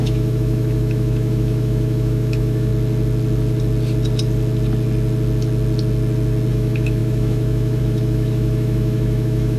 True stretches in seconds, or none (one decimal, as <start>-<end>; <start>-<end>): 2.7-6.5